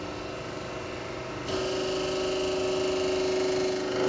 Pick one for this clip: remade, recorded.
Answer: recorded